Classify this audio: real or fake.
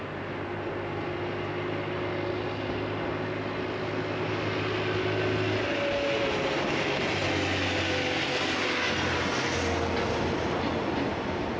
real